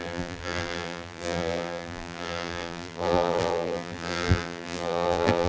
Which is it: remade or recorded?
remade